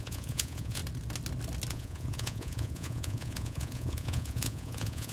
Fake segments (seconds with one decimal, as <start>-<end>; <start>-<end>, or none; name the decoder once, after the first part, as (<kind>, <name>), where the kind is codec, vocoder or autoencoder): 0.0-0.8 (vocoder, Vocos); 1.7-5.1